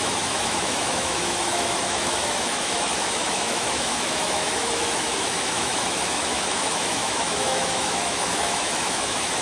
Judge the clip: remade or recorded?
remade